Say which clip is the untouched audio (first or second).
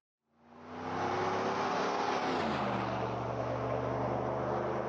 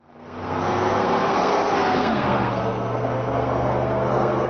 first